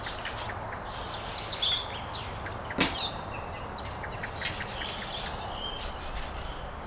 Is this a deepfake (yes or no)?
no